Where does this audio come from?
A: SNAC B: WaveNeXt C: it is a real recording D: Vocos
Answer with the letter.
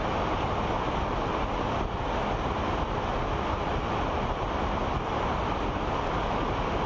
C